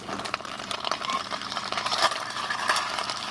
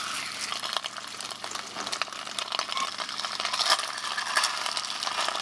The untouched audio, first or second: second